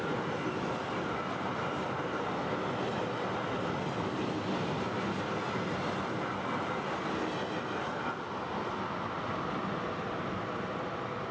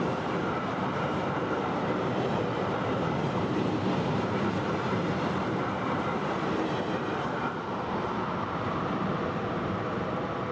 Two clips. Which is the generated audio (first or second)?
second